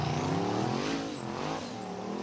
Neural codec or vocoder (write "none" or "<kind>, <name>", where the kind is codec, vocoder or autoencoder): none